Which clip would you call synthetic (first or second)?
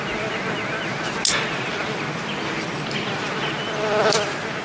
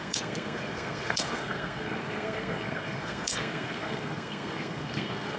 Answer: second